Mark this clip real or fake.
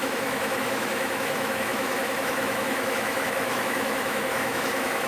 fake